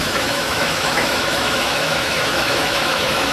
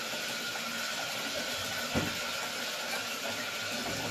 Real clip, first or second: second